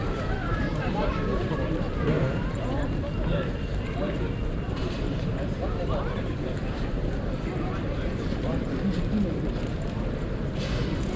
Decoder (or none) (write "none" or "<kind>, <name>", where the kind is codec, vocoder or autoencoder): vocoder, BigVGAN v2